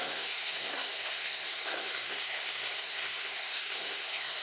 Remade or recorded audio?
remade